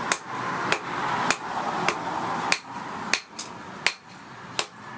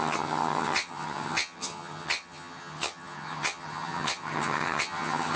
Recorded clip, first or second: first